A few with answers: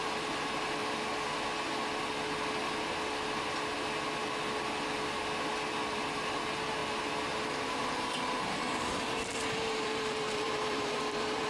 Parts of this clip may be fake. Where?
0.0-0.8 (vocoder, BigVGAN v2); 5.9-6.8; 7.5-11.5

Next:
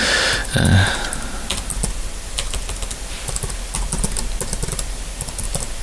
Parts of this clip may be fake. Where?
none

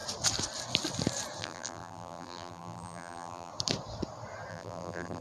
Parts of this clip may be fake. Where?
1.4-3.5 (vocoder, BigVGAN v2); 4.5-5.2

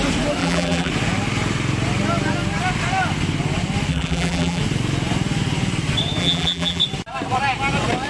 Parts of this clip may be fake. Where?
0.4-0.9 (vocoder, BigVGAN v2); 3.9-4.6; 6.2-6.8

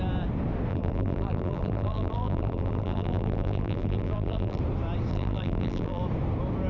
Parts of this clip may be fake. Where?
0.7-4.6 (vocoder, BigVGAN v2); 5.1-6.0